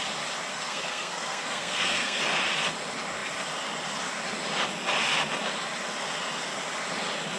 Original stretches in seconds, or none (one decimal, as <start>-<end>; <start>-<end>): 0.0-0.5; 2.2-7.4